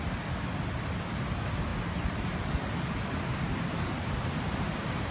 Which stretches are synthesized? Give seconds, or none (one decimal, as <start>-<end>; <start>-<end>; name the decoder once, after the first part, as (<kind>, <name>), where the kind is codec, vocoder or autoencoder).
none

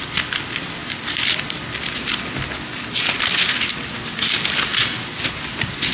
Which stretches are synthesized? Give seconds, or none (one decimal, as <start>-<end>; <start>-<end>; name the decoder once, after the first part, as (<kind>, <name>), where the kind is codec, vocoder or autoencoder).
none

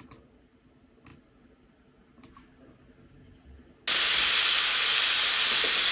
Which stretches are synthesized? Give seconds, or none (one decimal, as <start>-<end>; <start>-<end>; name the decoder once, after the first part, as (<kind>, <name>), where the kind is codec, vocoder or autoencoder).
none

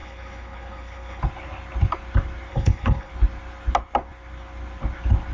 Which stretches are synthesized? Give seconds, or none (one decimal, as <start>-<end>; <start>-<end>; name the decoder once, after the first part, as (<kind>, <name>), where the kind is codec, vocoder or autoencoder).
0.0-1.2 (codec, HILCodec); 2.5-3.1